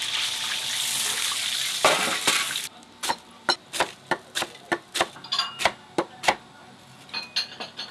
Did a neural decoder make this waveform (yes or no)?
no